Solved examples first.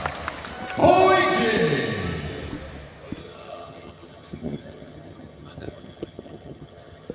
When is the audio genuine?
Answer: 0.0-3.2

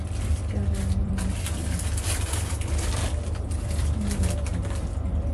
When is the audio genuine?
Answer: 0.0-1.0; 4.2-5.3

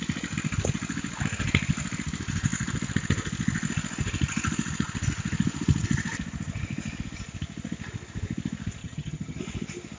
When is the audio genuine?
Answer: 0.0-8.8; 9.4-10.0